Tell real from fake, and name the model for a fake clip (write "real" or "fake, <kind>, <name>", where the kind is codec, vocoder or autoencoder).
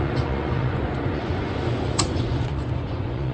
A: fake, vocoder, Vocos